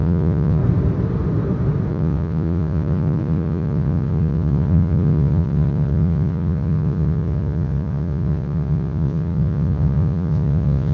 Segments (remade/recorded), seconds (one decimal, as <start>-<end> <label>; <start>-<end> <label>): 0.0-0.6 remade; 0.6-1.9 recorded; 1.9-10.9 remade